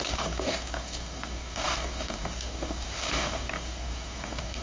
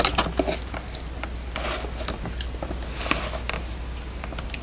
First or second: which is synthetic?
first